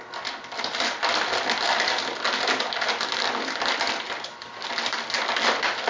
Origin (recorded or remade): recorded